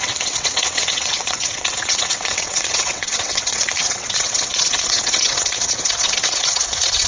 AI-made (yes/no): yes